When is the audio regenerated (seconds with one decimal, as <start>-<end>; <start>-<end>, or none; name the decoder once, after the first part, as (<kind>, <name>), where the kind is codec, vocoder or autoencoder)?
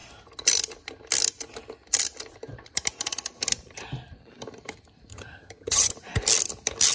5.1-5.9 (vocoder, HiFi-GAN)